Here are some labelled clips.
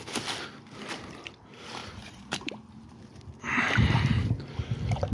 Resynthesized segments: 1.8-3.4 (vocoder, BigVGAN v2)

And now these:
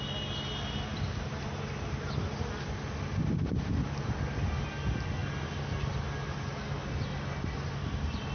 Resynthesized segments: none